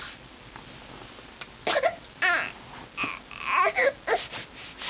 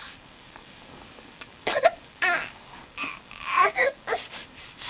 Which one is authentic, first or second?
first